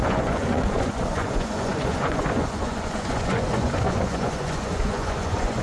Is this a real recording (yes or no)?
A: no